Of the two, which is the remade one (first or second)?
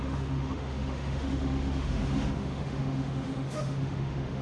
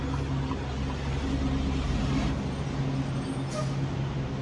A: first